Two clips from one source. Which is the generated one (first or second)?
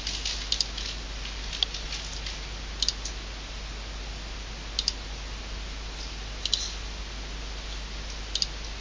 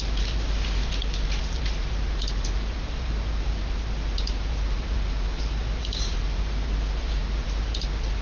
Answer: second